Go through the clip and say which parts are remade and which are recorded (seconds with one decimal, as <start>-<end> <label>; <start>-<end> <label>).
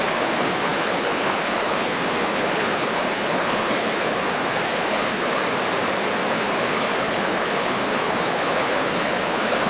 0.0-5.4 remade; 5.4-6.3 recorded; 6.3-9.7 remade